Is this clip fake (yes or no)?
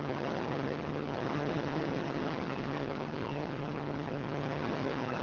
yes